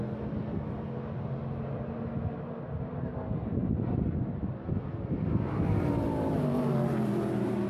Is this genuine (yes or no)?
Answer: yes